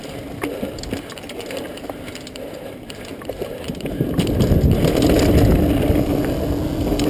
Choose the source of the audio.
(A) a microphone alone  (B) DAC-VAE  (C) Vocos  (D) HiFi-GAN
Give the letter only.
A